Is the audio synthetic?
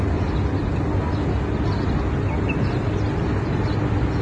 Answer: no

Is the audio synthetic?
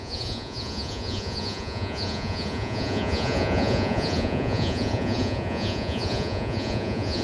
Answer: yes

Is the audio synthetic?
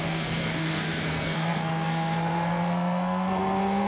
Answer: yes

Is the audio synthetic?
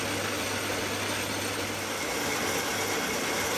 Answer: no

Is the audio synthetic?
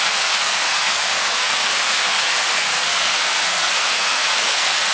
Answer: yes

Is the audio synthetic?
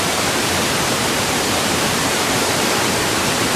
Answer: yes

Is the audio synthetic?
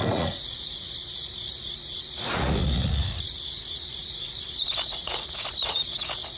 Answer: yes